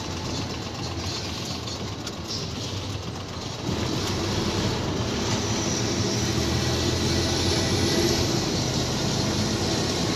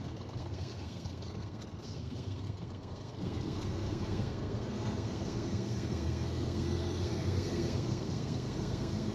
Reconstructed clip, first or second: second